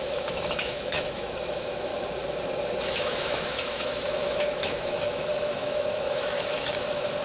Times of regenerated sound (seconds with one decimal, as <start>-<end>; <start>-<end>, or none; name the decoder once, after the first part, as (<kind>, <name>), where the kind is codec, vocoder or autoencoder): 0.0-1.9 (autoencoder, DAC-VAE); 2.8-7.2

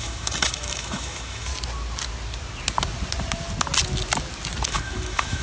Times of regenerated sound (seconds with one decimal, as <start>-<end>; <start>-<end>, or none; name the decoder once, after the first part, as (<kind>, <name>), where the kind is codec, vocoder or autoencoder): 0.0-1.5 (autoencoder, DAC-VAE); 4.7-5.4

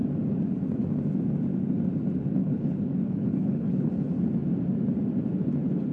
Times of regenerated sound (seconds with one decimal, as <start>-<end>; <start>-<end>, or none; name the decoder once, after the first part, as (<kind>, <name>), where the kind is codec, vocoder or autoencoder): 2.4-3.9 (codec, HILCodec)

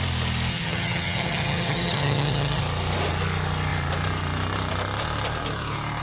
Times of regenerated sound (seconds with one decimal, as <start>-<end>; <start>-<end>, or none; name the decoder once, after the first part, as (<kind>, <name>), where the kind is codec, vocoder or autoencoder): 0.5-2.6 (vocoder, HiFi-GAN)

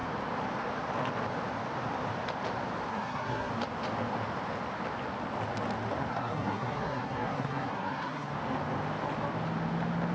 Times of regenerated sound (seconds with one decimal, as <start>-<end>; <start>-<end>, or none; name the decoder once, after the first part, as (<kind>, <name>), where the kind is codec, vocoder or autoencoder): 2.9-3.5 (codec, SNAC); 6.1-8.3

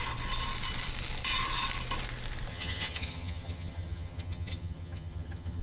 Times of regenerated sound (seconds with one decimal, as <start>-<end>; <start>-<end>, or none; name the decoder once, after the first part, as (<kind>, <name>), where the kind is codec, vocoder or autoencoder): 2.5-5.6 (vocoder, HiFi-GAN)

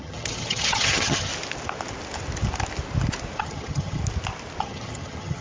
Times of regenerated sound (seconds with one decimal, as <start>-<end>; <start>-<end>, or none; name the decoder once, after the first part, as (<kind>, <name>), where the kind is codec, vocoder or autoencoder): 0.0-1.3 (vocoder, HiFi-GAN); 3.4-4.0; 4.6-5.4

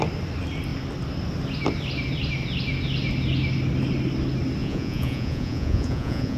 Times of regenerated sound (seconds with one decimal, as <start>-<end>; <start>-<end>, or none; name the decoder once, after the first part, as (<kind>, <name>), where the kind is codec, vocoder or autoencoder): 4.6-6.4 (vocoder, Vocos)